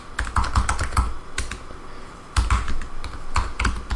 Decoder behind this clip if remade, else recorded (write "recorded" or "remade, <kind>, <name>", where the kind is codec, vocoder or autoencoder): recorded